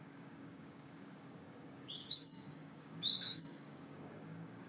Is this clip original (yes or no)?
no